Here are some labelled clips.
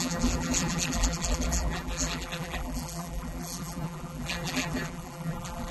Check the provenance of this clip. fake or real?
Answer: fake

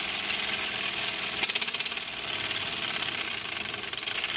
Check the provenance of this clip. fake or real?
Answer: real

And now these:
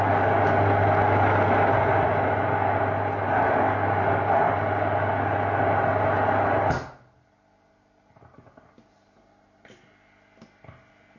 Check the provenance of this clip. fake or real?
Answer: real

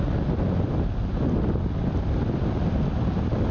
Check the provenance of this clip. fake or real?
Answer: real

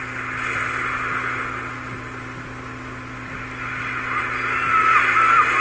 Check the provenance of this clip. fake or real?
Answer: real